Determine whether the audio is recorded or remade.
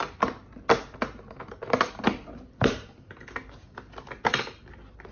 recorded